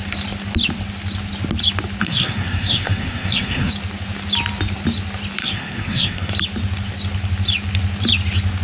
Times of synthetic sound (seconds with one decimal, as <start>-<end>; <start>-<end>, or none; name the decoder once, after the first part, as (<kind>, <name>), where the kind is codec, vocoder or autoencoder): 2.0-3.7 (codec, SNAC); 5.4-6.3